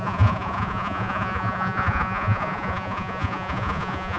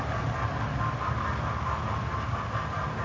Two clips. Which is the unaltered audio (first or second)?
second